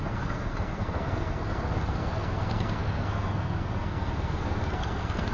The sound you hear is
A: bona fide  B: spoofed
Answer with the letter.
B